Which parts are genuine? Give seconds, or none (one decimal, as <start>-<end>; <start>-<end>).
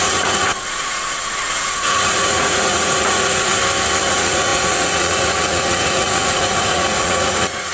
3.5-4.1